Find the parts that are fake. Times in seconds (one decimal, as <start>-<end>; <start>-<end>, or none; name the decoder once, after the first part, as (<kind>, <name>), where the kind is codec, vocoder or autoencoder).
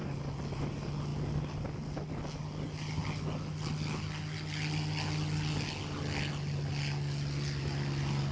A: none